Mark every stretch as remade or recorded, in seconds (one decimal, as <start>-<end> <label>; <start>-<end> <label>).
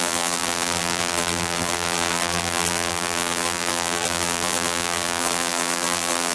0.0-6.3 remade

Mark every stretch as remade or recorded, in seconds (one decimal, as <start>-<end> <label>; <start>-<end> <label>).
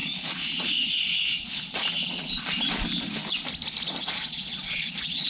0.0-2.4 remade; 2.4-4.0 recorded; 4.0-5.3 remade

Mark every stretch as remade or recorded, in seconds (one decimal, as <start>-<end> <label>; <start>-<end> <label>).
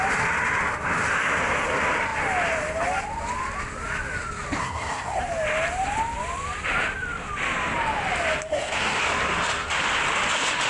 0.0-4.6 recorded; 4.6-5.2 remade; 5.2-8.5 recorded; 8.5-9.0 remade; 9.0-10.7 recorded